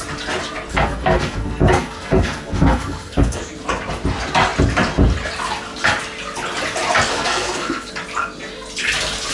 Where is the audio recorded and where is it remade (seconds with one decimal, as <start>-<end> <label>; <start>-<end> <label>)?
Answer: 0.0-0.7 recorded; 0.7-3.4 remade; 3.4-7.1 recorded; 7.1-7.9 remade; 7.9-9.3 recorded